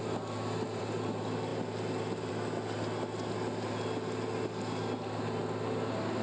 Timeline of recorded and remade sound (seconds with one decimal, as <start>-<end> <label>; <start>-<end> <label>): 0.0-6.2 recorded